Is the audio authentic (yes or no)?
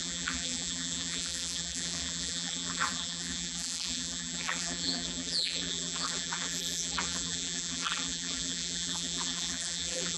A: no